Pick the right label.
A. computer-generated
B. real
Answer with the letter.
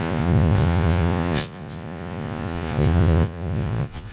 A